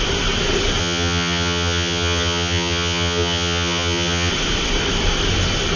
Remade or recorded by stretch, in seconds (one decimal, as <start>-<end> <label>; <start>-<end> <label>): 0.0-0.8 recorded; 0.8-4.3 remade; 4.3-5.8 recorded